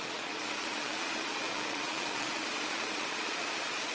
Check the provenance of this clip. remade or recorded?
remade